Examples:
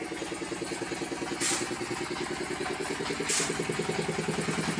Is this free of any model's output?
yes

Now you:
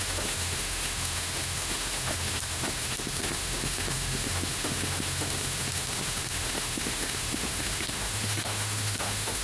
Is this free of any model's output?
no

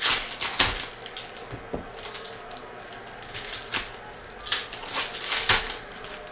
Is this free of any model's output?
yes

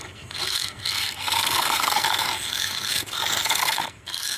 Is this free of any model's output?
no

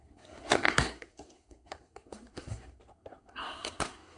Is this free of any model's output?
no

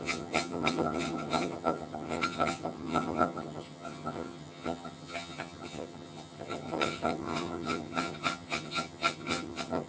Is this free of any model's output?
no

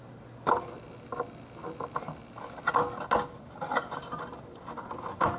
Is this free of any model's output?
yes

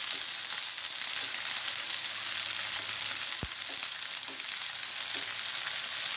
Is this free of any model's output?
yes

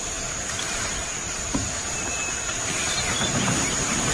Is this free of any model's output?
no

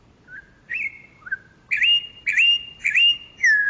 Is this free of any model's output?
yes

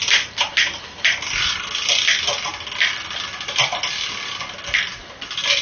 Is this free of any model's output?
yes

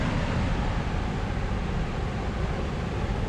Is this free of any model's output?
yes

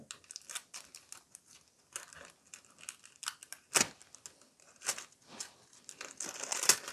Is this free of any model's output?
yes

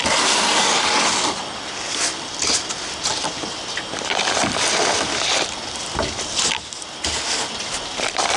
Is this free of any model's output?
yes